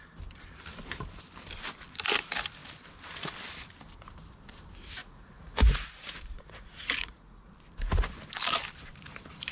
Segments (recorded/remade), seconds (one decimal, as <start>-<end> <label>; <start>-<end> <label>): 0.0-5.0 recorded; 5.0-7.5 remade; 7.5-9.5 recorded